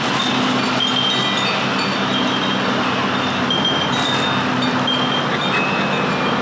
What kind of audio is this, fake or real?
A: real